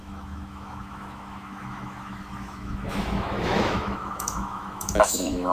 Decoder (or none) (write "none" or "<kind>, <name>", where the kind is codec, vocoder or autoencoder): autoencoder, DAC-VAE